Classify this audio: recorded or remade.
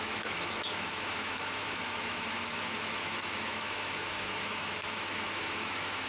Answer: remade